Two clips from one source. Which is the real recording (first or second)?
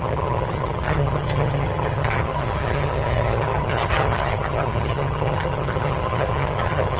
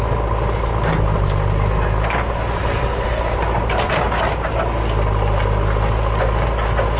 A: second